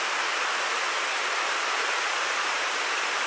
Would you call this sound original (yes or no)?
yes